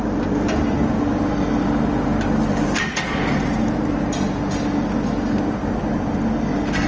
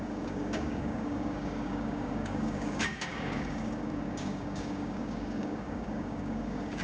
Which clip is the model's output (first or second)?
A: second